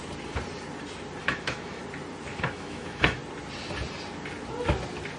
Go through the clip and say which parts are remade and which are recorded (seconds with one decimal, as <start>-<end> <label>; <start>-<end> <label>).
0.0-1.2 recorded; 1.2-1.8 remade; 1.8-2.3 recorded; 2.3-3.2 remade; 3.2-5.2 recorded